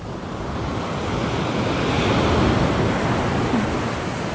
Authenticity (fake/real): real